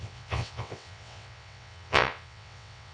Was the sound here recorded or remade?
remade